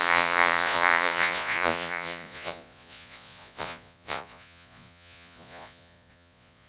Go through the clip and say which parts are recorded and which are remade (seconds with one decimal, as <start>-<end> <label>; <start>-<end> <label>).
0.0-6.7 remade